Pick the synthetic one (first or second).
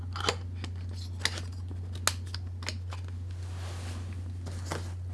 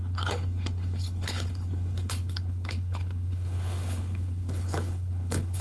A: second